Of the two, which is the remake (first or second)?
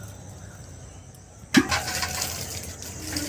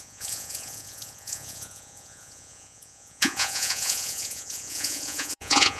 second